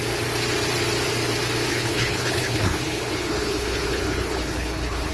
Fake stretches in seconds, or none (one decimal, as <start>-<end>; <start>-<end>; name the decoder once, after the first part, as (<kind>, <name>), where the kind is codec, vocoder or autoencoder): 1.7-5.1 (codec, HILCodec)